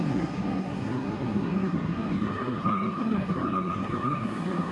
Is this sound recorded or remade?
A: remade